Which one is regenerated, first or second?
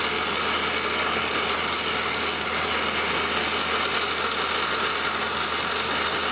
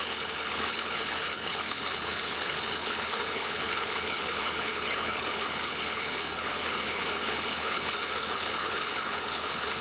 second